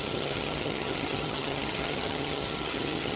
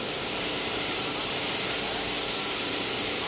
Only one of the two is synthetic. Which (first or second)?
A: first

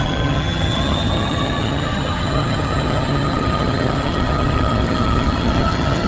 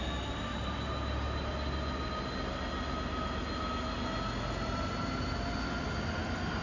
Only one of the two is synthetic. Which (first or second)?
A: first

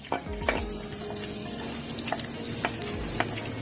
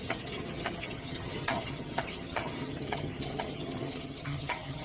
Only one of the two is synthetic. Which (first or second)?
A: second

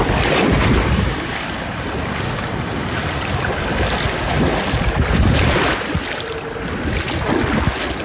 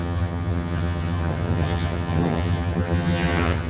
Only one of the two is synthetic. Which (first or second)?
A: second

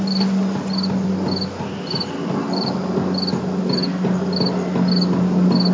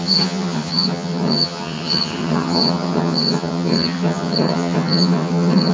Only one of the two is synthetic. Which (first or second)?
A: second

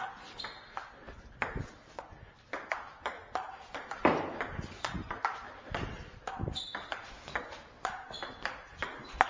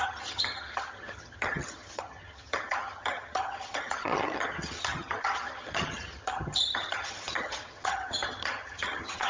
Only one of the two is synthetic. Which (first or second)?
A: second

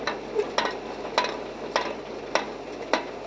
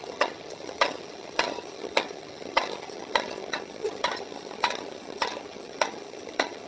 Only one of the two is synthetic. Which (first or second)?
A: second